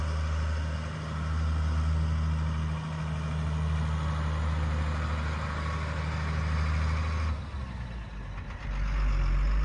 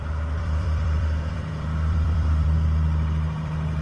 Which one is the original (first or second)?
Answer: first